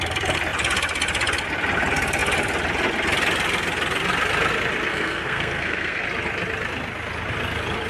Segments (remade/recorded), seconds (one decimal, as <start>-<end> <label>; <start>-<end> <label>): 0.0-4.9 recorded; 4.9-6.0 remade; 6.0-7.9 recorded